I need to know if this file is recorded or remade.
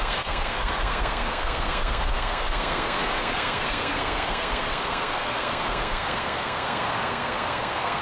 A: remade